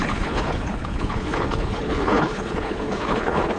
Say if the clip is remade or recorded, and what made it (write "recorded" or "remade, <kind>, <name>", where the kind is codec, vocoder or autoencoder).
remade, codec, HILCodec